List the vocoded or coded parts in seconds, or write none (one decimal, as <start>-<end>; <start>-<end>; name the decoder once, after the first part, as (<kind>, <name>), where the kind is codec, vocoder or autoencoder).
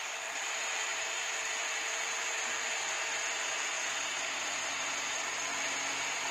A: 0.0-5.5 (vocoder, BigVGAN v2)